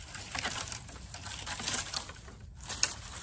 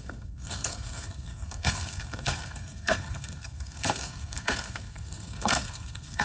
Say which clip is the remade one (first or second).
second